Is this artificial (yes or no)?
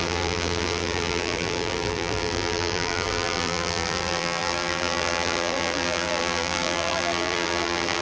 yes